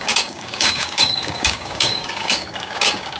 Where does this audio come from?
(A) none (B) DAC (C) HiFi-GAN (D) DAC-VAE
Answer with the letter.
B